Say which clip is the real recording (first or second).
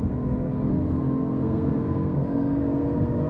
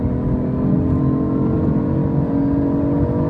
second